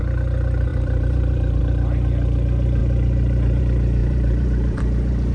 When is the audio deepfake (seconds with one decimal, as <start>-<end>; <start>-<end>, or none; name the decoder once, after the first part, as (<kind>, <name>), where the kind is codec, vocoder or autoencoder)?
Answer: 0.7-1.6 (vocoder, BigVGAN v2); 4.0-5.3